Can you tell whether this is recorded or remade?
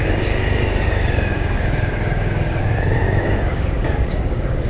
remade